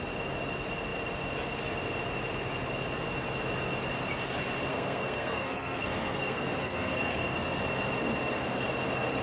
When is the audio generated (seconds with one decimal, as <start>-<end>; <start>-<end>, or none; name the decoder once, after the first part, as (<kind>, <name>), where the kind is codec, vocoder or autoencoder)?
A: 4.7-7.6 (codec, SNAC)